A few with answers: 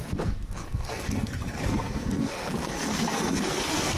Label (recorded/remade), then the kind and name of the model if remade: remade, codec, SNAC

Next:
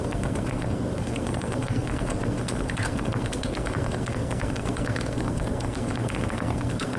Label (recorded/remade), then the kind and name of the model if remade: remade, codec, SNAC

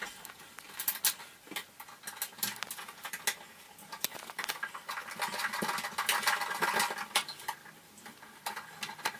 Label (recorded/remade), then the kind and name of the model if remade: recorded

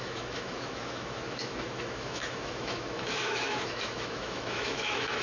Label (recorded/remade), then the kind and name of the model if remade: remade, autoencoder, DAC-VAE